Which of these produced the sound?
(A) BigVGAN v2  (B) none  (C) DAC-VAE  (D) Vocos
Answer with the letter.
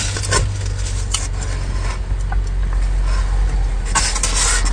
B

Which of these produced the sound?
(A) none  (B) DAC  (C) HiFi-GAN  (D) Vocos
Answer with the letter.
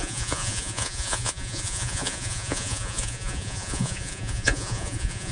D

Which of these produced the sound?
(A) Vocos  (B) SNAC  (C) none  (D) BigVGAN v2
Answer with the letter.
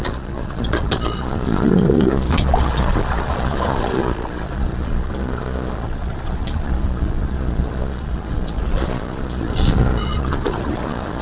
A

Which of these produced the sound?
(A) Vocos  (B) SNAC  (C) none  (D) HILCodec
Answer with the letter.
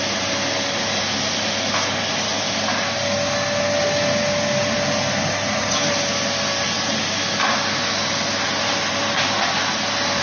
C